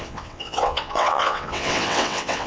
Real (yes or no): no